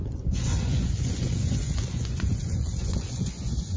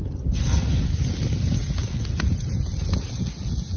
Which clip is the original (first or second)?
second